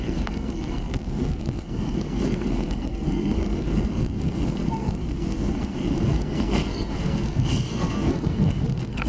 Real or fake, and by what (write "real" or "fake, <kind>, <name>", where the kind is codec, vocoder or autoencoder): fake, codec, SNAC